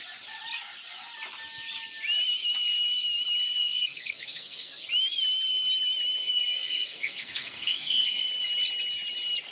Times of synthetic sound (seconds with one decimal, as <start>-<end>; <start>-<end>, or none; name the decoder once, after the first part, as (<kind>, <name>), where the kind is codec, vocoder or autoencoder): 3.6-4.9 (codec, SNAC); 6.2-8.3

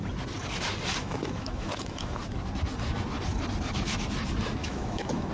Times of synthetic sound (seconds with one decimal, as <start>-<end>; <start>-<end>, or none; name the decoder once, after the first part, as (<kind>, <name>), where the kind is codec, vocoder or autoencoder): 1.0-2.2 (autoencoder, DAC-VAE); 4.6-5.3

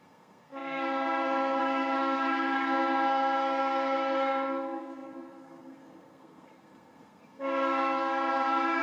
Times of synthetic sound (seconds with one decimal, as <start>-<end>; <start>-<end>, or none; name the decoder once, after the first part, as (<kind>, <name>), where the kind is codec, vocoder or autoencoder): 0.0-8.8 (codec, SNAC)